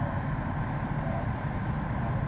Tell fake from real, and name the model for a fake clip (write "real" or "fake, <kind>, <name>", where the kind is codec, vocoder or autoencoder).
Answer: real